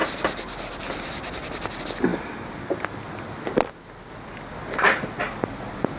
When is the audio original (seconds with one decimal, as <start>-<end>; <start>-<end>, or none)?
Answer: 0.0-6.0